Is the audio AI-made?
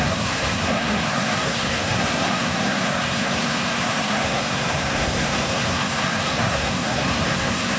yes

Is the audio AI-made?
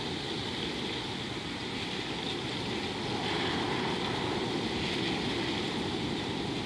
no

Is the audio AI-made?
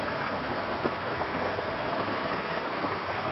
yes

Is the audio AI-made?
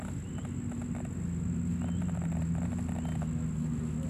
no